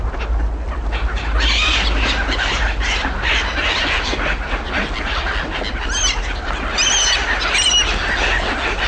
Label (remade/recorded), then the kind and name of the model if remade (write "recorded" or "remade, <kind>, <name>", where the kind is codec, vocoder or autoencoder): recorded